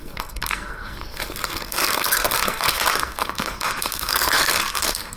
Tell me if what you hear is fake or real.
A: fake